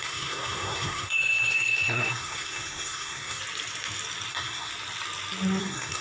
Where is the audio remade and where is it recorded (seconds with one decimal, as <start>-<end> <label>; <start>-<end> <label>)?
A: 0.0-3.4 remade; 3.4-4.3 recorded; 4.3-4.7 remade; 4.7-5.6 recorded; 5.6-6.0 remade